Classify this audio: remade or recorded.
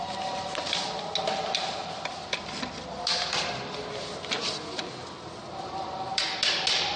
recorded